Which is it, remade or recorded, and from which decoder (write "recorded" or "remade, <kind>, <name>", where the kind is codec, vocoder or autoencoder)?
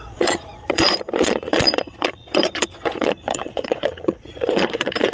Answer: remade, vocoder, Vocos